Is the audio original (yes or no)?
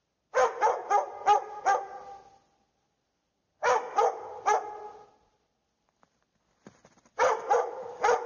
yes